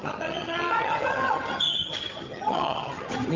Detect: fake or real fake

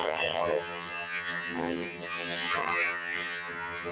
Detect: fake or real fake